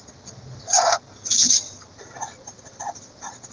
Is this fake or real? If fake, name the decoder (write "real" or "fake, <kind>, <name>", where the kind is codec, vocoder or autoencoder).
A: real